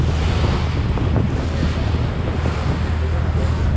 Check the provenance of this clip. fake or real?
real